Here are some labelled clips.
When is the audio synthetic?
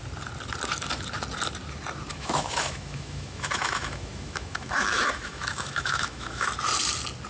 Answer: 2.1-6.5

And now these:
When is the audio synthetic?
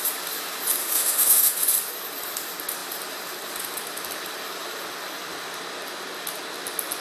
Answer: 0.8-1.5